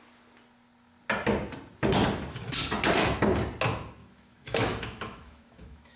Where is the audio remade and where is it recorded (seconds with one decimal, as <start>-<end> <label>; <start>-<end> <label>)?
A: 0.0-4.0 recorded; 4.0-6.0 remade